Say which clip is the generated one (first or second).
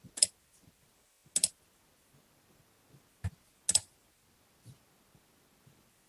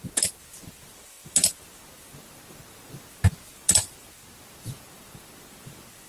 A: second